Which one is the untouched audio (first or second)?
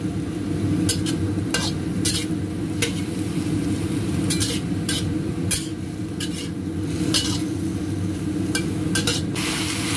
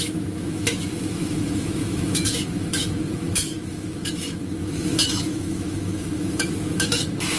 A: first